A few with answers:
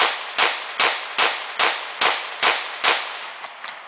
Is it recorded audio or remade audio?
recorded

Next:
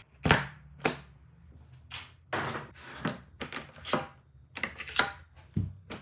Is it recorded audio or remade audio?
recorded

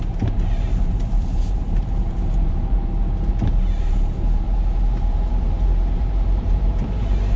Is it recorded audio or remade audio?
remade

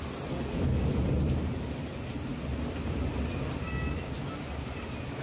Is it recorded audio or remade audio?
recorded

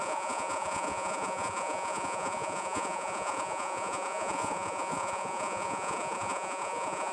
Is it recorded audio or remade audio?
remade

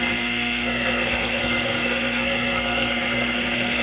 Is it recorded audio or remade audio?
remade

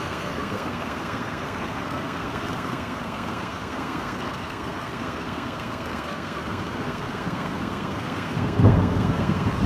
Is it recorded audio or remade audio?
remade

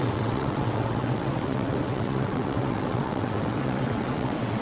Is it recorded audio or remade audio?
remade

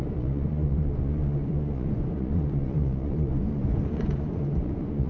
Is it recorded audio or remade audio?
remade